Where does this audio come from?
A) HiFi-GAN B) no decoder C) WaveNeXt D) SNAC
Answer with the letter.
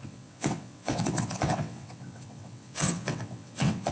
C